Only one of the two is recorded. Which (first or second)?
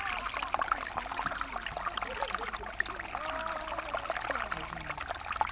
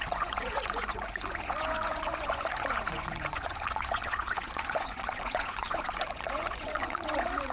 first